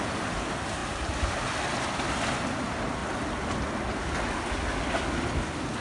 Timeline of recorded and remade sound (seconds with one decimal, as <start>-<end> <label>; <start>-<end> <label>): 0.0-5.8 recorded